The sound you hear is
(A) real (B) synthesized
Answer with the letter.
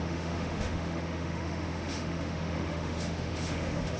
B